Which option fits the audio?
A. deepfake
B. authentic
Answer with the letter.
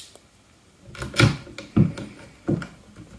B